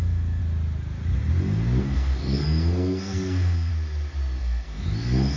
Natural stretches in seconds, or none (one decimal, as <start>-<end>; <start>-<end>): 0.4-1.8; 3.7-4.4